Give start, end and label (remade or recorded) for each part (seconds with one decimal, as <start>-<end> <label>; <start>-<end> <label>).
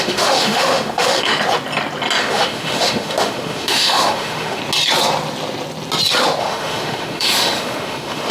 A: 0.0-1.3 remade; 1.3-2.2 recorded; 2.2-4.6 remade; 4.6-6.4 recorded; 6.4-8.3 remade